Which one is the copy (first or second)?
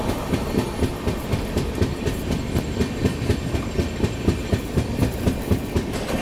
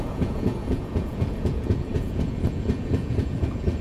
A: second